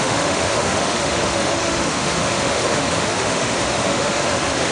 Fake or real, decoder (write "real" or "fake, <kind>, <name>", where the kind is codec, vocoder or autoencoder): fake, autoencoder, DAC-VAE